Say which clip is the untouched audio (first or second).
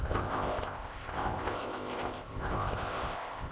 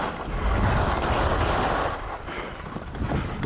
second